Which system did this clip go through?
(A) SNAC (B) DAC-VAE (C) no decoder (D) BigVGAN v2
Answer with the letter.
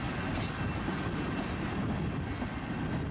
C